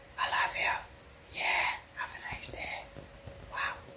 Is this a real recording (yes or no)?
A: yes